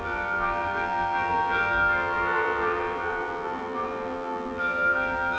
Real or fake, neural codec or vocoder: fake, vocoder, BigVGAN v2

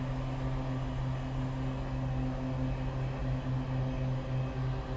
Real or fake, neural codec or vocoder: real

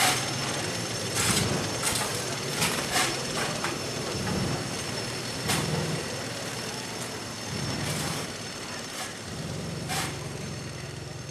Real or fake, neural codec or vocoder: fake, vocoder, BigVGAN v2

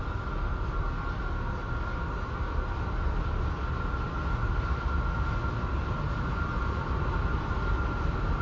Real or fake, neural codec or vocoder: real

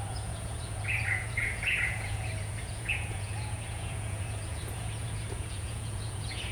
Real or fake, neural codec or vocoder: fake, vocoder, Vocos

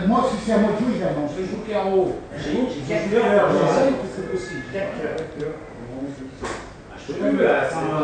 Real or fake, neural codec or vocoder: real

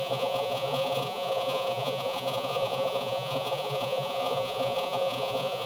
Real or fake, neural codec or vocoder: fake, vocoder, Vocos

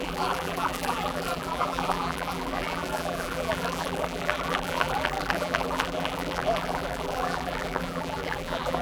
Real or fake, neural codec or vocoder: fake, vocoder, BigVGAN v2